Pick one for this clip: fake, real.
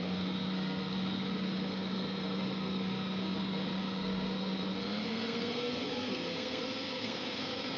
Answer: fake